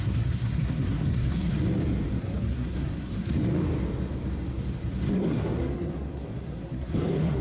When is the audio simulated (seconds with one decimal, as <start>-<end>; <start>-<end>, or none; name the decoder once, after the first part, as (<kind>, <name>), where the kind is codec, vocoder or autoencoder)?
0.0-1.5 (codec, SNAC); 2.2-3.4; 5.1-7.4

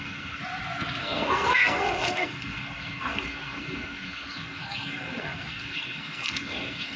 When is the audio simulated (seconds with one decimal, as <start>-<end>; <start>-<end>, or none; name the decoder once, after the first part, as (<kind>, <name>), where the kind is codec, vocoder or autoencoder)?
0.0-0.4 (codec, SNAC); 1.0-7.0

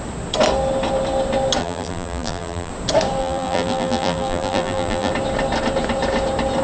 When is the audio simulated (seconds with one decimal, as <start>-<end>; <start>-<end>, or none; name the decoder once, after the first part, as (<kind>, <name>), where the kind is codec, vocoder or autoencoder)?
1.6-2.7 (vocoder, BigVGAN v2); 3.2-5.1

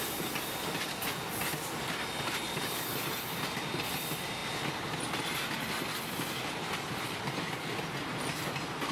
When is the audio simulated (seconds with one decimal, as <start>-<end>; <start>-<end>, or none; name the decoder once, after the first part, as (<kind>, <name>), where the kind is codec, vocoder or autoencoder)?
none

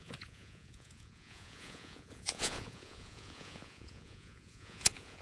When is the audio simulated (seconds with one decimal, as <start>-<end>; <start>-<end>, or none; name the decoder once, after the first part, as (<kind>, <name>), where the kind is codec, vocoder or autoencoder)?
0.0-5.2 (vocoder, Vocos)

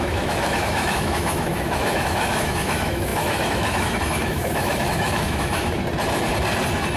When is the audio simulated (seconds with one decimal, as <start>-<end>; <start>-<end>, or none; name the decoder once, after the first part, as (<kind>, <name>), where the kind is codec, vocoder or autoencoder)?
0.0-5.8 (autoencoder, DAC-VAE)

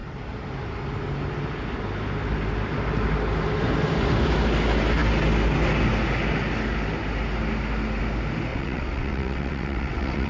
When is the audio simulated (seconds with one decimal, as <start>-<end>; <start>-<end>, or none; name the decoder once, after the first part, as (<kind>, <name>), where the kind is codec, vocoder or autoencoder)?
8.5-10.3 (vocoder, WaveNeXt)